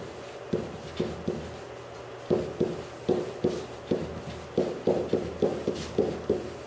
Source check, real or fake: real